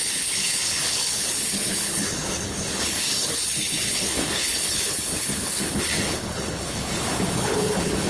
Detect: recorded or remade remade